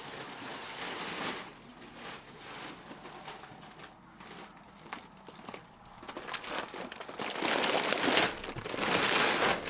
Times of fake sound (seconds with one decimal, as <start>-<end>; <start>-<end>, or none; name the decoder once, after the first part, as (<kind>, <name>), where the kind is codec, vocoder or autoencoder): none